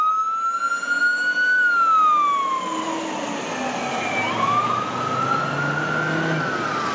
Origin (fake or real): real